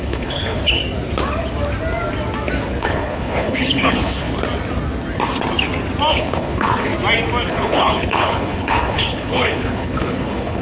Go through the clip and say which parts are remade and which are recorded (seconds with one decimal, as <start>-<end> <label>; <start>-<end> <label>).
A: 0.0-0.8 remade; 0.8-2.8 recorded; 2.8-4.3 remade; 4.3-6.1 recorded; 6.1-6.9 remade; 6.9-7.5 recorded; 7.5-10.6 remade